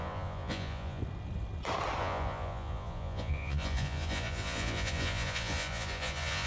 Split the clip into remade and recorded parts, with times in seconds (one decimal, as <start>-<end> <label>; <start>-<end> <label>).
0.0-1.0 remade; 1.0-2.0 recorded; 2.0-6.5 remade